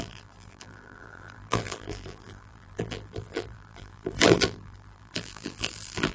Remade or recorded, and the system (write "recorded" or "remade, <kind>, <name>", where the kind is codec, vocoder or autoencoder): remade, vocoder, BigVGAN v2